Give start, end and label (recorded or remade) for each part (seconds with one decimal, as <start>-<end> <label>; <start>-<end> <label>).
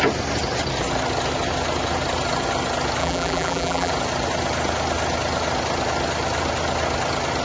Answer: 0.0-3.0 recorded; 3.0-3.9 remade; 3.9-7.4 recorded